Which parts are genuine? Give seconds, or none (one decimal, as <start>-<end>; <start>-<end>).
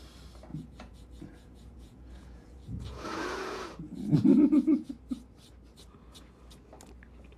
0.0-0.5; 4.9-7.4